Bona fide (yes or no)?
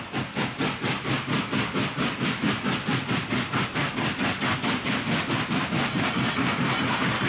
yes